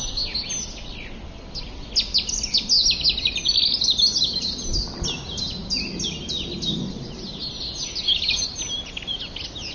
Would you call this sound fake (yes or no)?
no